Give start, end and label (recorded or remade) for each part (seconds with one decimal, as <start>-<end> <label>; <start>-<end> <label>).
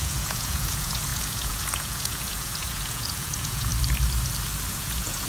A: 0.0-3.7 remade; 3.7-4.7 recorded; 4.7-5.3 remade